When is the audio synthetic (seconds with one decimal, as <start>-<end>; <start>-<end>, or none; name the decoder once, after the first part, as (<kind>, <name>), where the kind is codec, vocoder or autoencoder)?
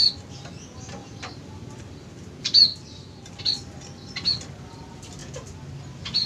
1.0-1.8 (vocoder, BigVGAN v2); 2.7-3.4